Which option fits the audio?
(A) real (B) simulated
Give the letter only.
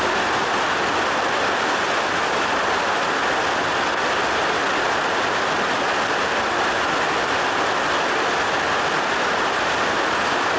A